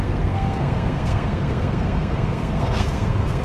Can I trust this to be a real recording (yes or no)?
no